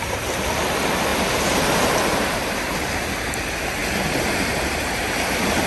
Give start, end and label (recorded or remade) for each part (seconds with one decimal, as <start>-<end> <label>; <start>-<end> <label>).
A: 0.0-1.1 recorded; 1.1-3.1 remade; 3.1-3.8 recorded; 3.8-5.0 remade; 5.0-5.7 recorded